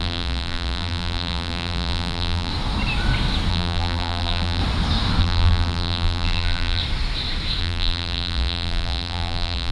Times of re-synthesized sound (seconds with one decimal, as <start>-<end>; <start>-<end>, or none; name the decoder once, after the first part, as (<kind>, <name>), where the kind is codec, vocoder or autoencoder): 0.0-2.5 (vocoder, BigVGAN v2); 3.5-4.6; 5.2-6.8; 7.6-9.7